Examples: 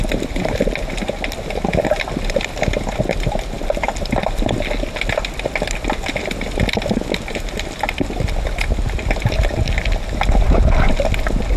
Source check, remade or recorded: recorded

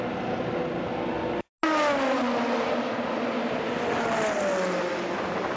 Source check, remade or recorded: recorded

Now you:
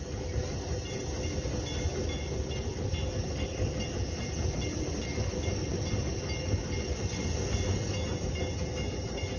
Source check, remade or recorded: recorded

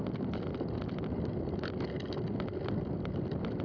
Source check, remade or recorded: recorded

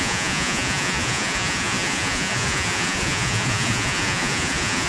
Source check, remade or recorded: remade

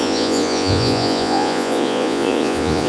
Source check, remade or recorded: remade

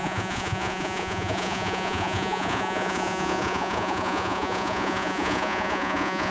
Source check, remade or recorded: remade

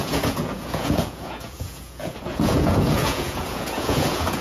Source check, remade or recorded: remade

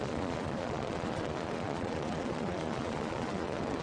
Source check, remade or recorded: remade